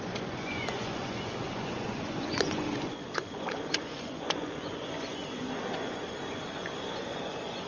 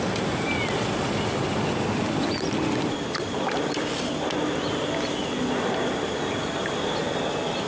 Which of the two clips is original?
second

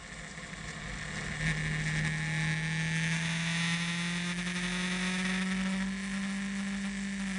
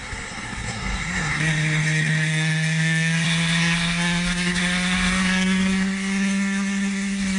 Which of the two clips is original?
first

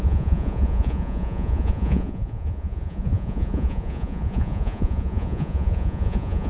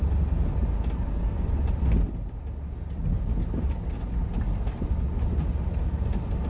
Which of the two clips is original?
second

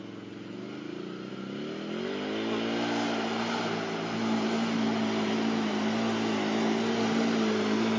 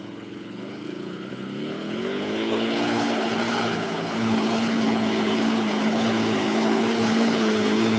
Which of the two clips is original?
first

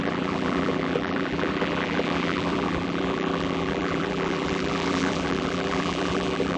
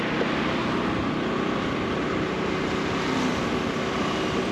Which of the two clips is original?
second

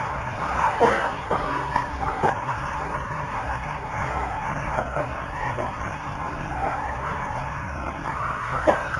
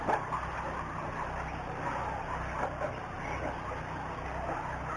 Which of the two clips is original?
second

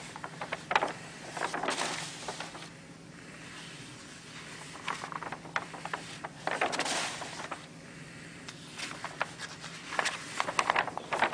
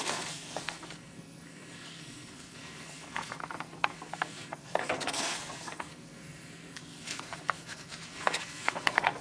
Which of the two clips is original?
first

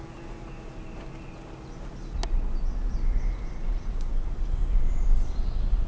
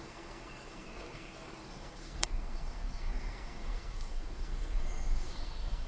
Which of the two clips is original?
first